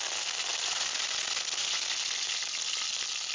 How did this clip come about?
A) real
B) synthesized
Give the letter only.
A